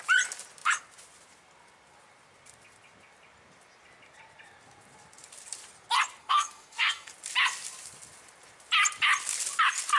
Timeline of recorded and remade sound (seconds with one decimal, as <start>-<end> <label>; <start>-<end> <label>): 0.0-6.2 recorded; 6.2-7.1 remade; 7.1-10.0 recorded